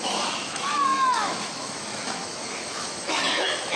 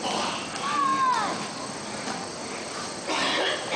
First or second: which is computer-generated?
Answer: first